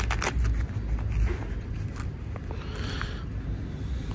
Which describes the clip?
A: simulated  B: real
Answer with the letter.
B